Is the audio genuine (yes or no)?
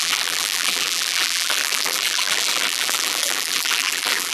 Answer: no